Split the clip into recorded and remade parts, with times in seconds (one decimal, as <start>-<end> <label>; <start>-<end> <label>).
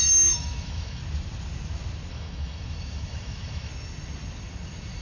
0.0-1.0 remade; 1.0-2.1 recorded; 2.1-3.7 remade; 3.7-5.0 recorded